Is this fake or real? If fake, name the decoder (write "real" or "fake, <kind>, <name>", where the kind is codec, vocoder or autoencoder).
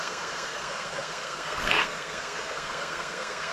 fake, codec, SNAC